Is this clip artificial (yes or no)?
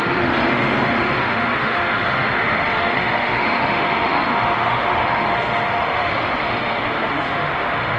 yes